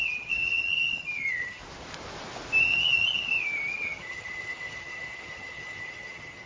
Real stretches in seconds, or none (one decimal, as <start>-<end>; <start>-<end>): 1.6-2.6